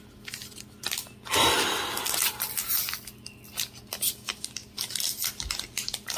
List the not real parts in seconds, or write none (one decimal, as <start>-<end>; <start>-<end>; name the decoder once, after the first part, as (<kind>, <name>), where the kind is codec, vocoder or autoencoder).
none

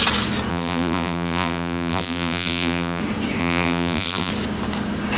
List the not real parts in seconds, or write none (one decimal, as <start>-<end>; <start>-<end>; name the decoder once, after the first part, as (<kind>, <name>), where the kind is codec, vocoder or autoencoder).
0.5-3.0 (vocoder, BigVGAN v2); 3.4-4.3

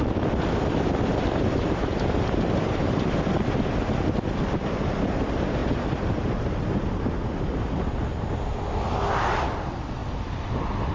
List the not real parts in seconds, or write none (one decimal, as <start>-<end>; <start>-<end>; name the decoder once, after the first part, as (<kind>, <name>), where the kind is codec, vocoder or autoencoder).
1.1-2.4 (vocoder, BigVGAN v2); 5.6-6.2; 10.0-10.5

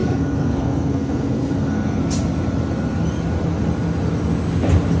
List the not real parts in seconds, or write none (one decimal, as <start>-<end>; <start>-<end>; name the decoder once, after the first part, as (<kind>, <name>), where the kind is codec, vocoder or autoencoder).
0.0-2.0 (codec, SNAC)

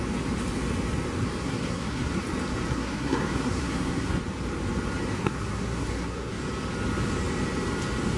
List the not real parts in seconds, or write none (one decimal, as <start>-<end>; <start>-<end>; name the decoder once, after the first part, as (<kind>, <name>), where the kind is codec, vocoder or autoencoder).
1.4-2.2 (codec, SNAC); 2.7-4.1; 5.2-6.4